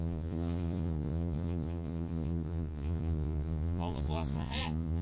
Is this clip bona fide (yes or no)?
no